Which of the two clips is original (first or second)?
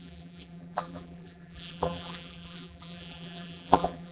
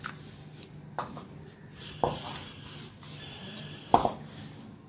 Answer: second